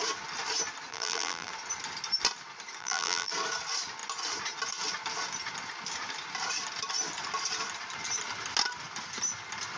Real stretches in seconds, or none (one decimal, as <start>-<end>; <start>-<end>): 0.0-0.9; 1.5-2.8; 3.3-9.8